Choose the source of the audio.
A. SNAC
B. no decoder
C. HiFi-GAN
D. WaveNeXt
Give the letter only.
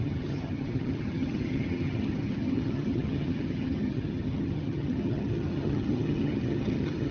C